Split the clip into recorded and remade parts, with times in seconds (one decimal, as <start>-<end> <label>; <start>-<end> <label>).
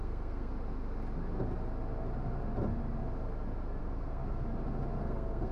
0.0-0.5 remade; 0.5-3.8 recorded; 3.8-4.2 remade; 4.2-5.0 recorded; 5.0-5.5 remade